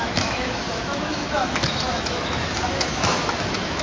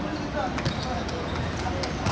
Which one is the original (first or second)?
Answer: second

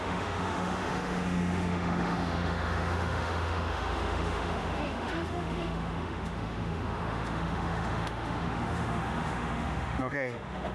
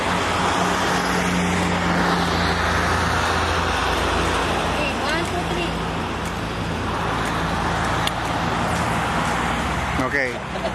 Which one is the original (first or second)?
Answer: second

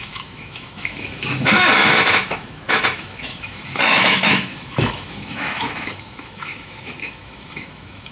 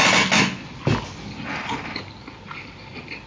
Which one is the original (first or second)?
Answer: second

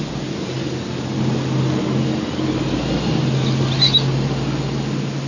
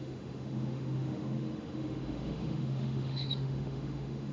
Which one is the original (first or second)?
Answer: first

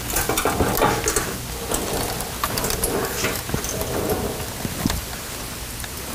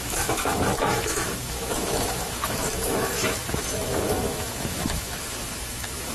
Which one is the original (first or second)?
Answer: first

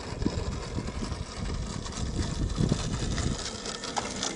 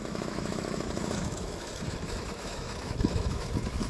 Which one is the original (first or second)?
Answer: first